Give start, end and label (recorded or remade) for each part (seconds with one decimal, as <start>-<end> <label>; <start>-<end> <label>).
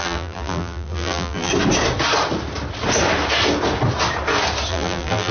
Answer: 0.0-1.5 remade; 1.5-4.7 recorded; 4.7-5.3 remade